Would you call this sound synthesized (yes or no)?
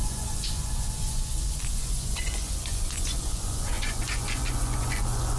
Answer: yes